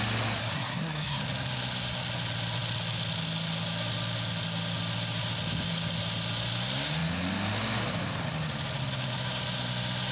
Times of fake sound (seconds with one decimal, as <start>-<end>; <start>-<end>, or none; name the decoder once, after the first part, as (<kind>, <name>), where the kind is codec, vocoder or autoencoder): 0.4-1.2 (codec, SNAC)